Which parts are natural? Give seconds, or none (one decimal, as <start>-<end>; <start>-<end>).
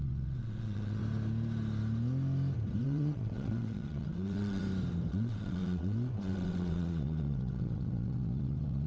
1.0-2.8; 4.6-5.1